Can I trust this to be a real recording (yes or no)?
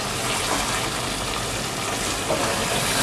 yes